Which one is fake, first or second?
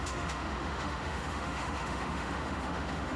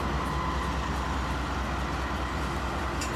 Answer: first